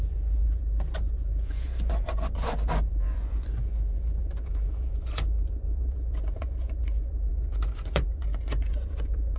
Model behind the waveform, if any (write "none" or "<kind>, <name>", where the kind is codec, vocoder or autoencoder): vocoder, Vocos